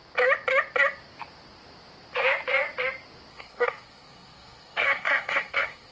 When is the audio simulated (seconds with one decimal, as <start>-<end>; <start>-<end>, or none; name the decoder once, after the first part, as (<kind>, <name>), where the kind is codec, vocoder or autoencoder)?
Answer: 3.3-5.9 (codec, SNAC)